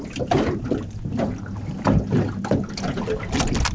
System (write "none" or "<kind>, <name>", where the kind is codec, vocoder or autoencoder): none